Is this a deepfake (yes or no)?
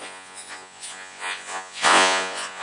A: yes